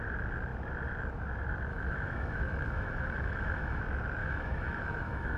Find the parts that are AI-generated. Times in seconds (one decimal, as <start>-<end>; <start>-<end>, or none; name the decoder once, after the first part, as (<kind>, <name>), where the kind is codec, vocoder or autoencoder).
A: 1.7-3.8 (autoencoder, DAC-VAE); 4.2-5.4